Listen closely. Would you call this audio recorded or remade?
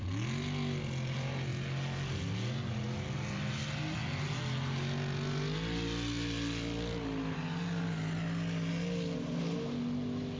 recorded